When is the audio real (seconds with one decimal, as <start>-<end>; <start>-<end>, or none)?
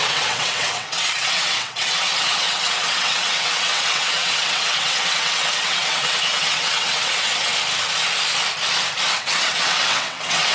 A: 7.5-9.1